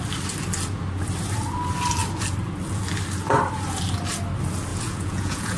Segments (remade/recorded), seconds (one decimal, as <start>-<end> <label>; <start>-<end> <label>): 0.0-4.7 recorded; 4.7-5.6 remade